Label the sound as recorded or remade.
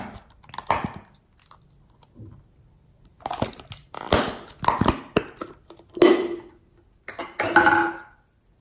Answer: recorded